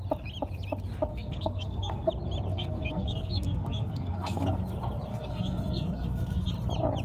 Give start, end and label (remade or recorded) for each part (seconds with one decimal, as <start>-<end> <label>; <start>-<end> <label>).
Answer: 0.0-1.1 recorded; 1.1-2.1 remade; 2.1-2.5 recorded; 2.5-4.6 remade; 4.6-5.1 recorded; 5.1-6.5 remade; 6.5-7.0 recorded